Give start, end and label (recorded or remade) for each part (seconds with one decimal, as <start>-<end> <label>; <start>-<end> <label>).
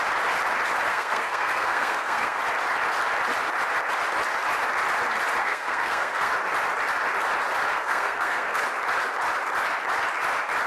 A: 0.0-0.9 recorded; 0.9-2.4 remade; 2.4-5.4 recorded; 5.4-6.3 remade; 6.3-7.7 recorded; 7.7-8.6 remade; 8.6-10.7 recorded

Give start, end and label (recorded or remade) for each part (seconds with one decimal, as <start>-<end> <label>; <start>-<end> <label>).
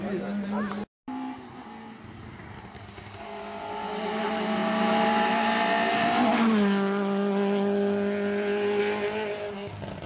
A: 0.0-10.1 recorded